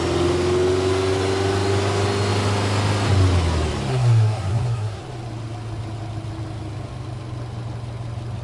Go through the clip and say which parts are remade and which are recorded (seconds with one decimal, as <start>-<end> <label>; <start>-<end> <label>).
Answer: 0.0-3.9 recorded; 3.9-5.0 remade; 5.0-8.4 recorded